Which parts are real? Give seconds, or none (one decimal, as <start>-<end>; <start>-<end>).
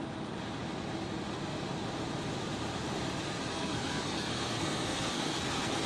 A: 0.0-3.5